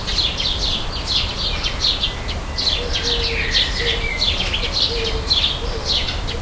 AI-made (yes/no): no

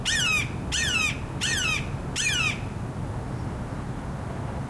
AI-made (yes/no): no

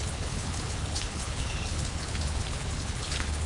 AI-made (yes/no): yes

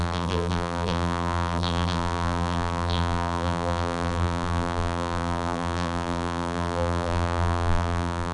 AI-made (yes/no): yes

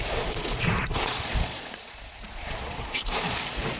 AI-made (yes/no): yes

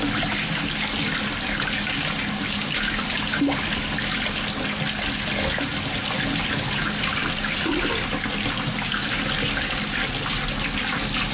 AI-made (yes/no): no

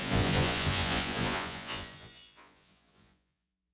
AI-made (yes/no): yes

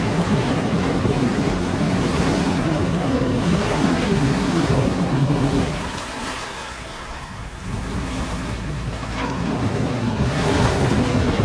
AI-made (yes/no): yes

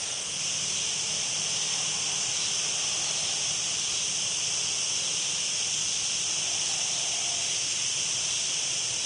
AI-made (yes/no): no